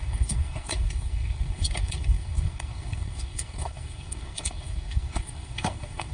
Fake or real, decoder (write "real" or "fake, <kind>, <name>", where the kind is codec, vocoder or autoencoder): fake, codec, SNAC